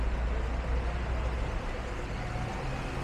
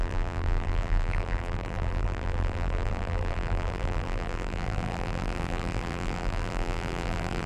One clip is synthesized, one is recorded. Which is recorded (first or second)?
first